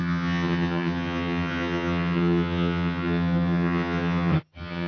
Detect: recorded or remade remade